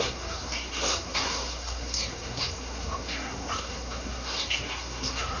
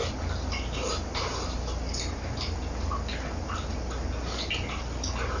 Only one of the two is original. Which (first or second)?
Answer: second